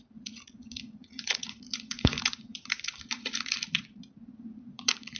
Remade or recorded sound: remade